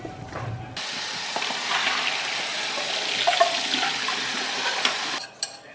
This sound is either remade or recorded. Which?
recorded